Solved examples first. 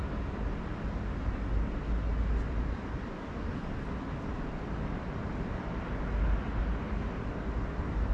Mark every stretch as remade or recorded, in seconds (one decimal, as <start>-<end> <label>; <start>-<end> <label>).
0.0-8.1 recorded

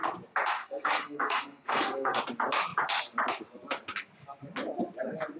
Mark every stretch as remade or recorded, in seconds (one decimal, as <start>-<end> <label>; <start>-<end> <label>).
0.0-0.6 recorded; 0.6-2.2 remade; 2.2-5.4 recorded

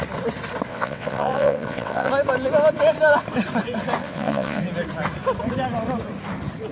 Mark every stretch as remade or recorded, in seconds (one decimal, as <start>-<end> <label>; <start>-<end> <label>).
0.0-0.7 recorded; 0.7-2.1 remade; 2.1-4.0 recorded; 4.0-4.6 remade; 4.6-6.7 recorded